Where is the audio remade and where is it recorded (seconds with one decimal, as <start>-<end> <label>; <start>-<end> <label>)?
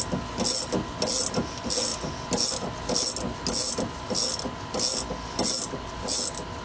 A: 0.0-6.6 recorded